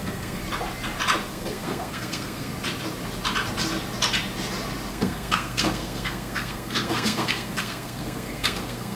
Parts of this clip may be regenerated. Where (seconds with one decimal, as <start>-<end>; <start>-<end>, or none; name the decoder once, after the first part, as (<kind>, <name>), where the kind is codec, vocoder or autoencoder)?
0.0-0.4 (codec, SNAC); 1.3-2.5; 4.9-8.9